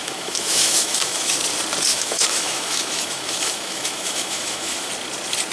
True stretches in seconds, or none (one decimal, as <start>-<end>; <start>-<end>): 1.3-1.9; 4.9-5.5